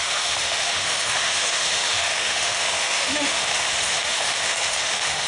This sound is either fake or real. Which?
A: fake